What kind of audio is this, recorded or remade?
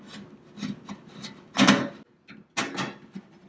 recorded